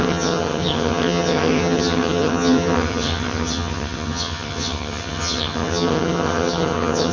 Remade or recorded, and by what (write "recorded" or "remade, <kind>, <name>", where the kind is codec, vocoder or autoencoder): remade, vocoder, HiFi-GAN